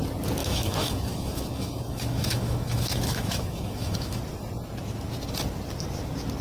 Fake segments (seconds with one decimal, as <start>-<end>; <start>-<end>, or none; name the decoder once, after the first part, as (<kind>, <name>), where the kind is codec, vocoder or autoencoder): 0.4-4.2 (autoencoder, DAC-VAE)